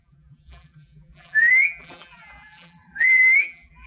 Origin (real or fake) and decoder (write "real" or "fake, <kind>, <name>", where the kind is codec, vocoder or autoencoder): fake, vocoder, BigVGAN v2